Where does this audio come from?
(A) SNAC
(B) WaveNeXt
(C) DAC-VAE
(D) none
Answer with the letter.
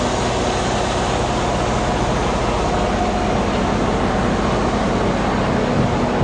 D